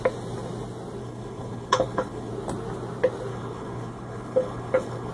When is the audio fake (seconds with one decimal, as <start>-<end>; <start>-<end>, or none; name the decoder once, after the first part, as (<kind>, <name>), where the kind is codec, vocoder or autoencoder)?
1.0-2.3 (codec, HILCodec); 3.3-5.1